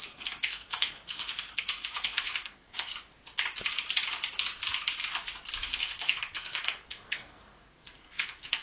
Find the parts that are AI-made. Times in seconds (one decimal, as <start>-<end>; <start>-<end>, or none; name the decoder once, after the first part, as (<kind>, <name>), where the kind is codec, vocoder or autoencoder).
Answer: 0.0-2.9 (codec, SNAC); 5.6-8.6